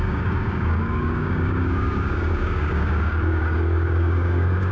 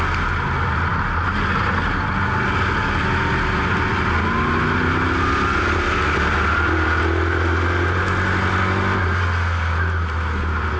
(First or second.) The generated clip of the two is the first